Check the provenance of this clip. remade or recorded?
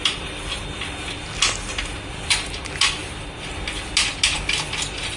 recorded